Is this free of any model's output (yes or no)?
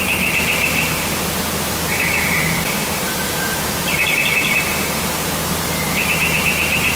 no